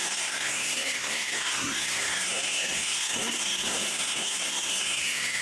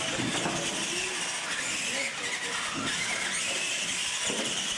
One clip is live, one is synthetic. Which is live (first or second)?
second